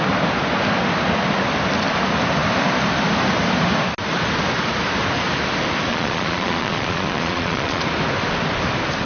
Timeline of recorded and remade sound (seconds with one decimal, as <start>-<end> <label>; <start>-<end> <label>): 0.0-5.9 recorded; 5.9-7.8 remade; 7.8-9.1 recorded